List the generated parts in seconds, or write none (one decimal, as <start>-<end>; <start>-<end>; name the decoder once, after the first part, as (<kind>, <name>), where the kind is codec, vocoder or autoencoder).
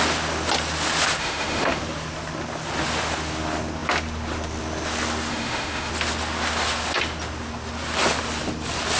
1.2-1.8 (autoencoder, DAC-VAE); 5.3-5.9